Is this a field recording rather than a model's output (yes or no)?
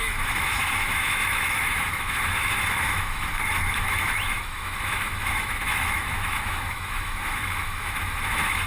no